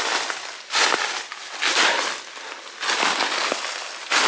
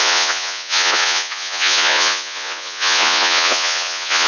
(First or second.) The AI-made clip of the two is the second